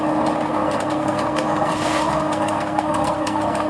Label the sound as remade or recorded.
remade